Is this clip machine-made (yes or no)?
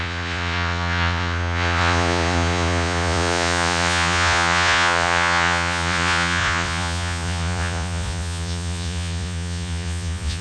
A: yes